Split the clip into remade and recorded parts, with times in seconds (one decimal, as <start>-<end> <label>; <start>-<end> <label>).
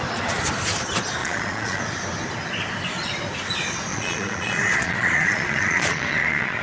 0.0-1.2 recorded; 1.2-1.8 remade; 1.8-3.9 recorded; 3.9-6.6 remade